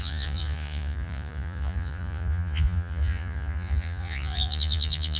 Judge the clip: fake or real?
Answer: fake